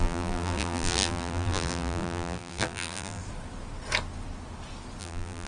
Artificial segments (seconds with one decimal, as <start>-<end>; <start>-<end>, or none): 0.0-3.2; 5.0-5.5